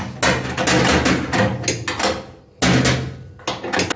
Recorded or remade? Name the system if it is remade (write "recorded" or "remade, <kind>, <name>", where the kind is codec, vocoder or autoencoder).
recorded